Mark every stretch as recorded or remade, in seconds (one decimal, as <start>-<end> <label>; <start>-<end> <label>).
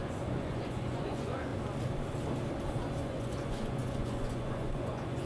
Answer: 0.0-1.5 remade; 1.5-3.0 recorded; 3.0-5.3 remade